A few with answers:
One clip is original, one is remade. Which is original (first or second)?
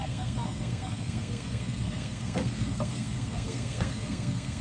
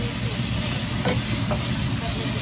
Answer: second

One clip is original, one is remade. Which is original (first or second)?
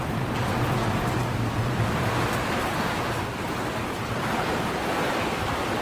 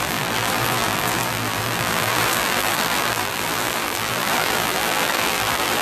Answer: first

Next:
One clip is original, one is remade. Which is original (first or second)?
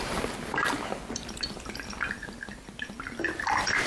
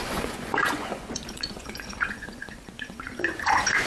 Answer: first